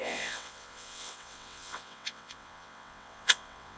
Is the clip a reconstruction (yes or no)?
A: yes